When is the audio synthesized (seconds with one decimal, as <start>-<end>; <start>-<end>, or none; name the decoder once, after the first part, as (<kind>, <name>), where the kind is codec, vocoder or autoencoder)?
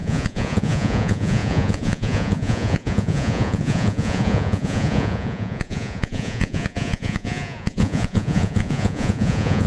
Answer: 0.0-9.7 (vocoder, Vocos)